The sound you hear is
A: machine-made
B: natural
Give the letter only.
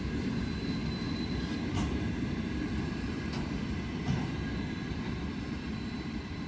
B